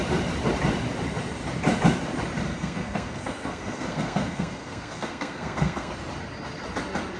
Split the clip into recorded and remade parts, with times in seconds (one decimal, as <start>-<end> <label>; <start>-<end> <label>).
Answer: 0.0-2.5 recorded; 2.5-5.9 remade; 5.9-7.2 recorded